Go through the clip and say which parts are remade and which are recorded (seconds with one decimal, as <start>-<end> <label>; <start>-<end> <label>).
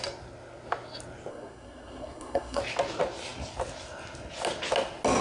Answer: 0.0-1.3 recorded; 1.3-2.6 remade; 2.6-5.2 recorded